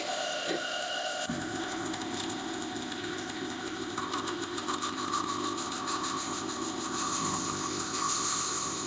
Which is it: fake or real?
fake